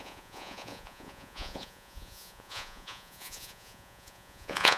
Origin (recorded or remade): remade